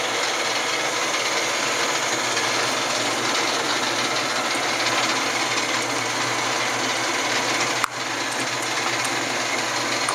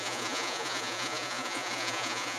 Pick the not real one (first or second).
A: second